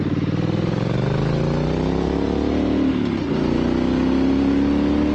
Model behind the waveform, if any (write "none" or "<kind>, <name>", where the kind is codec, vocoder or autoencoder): none